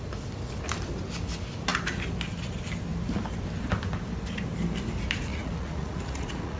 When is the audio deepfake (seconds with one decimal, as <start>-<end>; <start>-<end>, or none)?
5.3-6.6